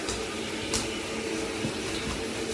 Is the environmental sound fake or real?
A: real